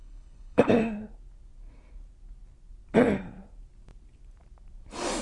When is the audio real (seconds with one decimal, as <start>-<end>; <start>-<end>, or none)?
0.6-5.2